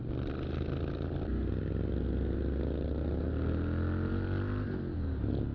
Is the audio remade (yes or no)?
no